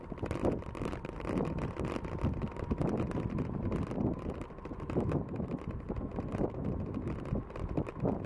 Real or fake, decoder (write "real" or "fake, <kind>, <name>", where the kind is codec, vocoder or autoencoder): real